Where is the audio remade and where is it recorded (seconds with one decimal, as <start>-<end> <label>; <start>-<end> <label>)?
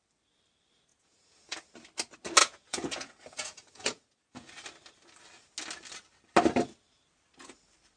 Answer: 0.0-0.9 recorded; 0.9-1.6 remade; 1.6-2.4 recorded; 2.4-4.5 remade; 4.5-8.0 recorded